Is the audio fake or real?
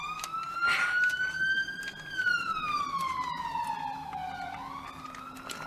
real